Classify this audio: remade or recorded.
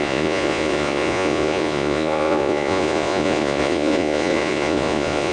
remade